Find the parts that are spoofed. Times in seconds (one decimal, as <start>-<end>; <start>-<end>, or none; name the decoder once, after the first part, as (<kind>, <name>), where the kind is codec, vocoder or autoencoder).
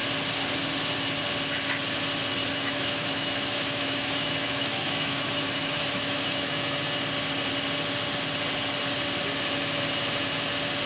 2.4-6.8 (autoencoder, DAC-VAE)